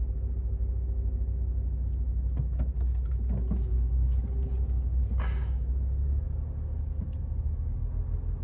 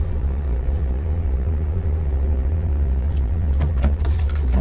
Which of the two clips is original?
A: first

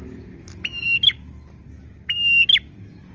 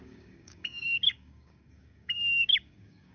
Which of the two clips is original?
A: first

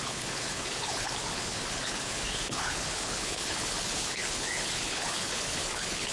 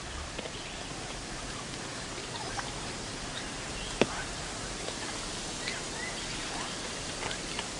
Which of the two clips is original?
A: second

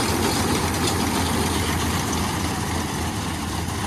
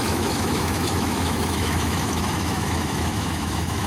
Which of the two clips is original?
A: first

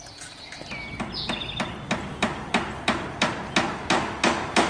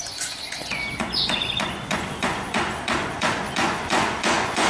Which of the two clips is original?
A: first